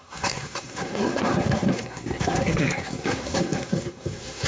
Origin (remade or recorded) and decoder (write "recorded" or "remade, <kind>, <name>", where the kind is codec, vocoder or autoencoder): remade, codec, SNAC